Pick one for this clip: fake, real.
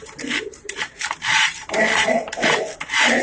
fake